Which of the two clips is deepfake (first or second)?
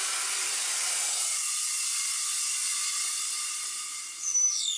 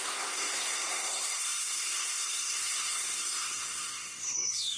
second